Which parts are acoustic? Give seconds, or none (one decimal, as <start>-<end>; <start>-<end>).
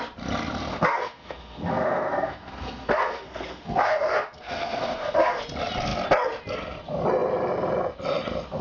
0.0-0.7; 5.4-8.6